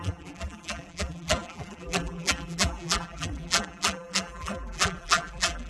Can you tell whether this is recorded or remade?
remade